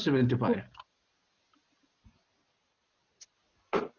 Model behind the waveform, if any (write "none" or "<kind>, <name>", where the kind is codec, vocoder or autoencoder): none